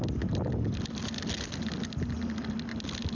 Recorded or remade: recorded